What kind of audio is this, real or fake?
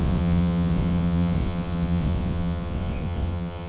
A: fake